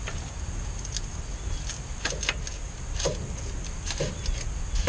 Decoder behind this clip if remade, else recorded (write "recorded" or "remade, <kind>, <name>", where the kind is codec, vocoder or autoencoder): recorded